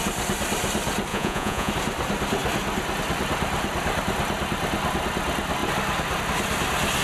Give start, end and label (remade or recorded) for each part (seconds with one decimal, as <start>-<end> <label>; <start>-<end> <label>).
0.0-1.1 recorded; 1.1-1.7 remade; 1.7-7.0 recorded